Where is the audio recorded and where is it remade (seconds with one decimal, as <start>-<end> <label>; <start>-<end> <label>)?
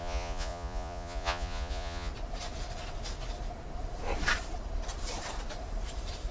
0.0-2.1 remade; 2.1-6.3 recorded